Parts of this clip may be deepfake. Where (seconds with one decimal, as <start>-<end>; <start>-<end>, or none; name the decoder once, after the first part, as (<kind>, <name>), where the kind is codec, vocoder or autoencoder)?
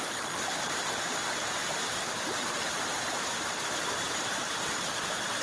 1.6-4.8 (vocoder, BigVGAN v2)